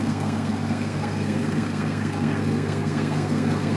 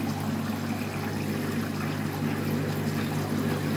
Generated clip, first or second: first